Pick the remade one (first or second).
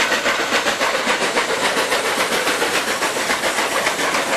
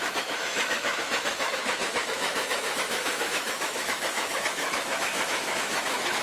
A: second